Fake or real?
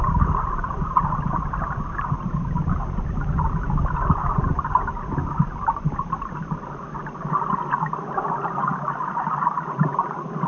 real